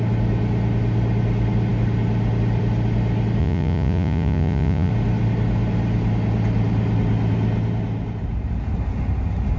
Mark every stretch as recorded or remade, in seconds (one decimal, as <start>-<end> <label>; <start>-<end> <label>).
0.0-3.4 recorded; 3.4-4.9 remade; 4.9-9.6 recorded